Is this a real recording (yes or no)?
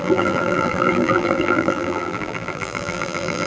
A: no